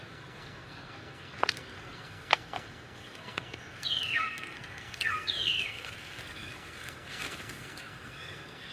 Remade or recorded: remade